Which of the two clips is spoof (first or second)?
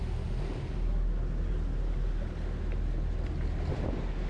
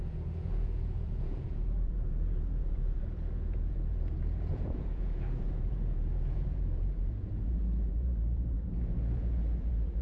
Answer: second